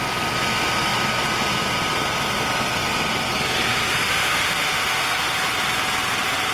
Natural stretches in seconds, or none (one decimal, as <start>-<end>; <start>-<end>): 0.0-3.7; 5.3-6.5